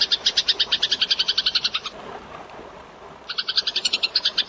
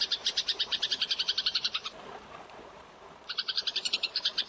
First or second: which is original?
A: first